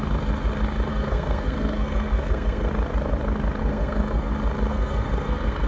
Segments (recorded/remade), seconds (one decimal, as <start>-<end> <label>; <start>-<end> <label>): 0.0-0.9 recorded; 0.9-2.7 remade; 2.7-3.6 recorded; 3.6-4.3 remade; 4.3-4.7 recorded; 4.7-5.7 remade